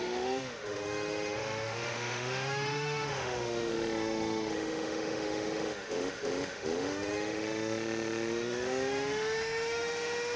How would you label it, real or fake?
fake